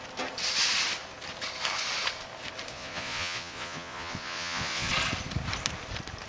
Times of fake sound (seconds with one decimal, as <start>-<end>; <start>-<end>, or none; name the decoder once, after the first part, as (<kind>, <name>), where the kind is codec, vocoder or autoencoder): 2.7-4.9 (vocoder, Vocos)